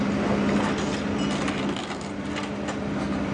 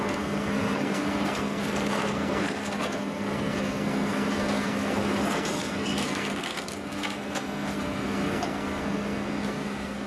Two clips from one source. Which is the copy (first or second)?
second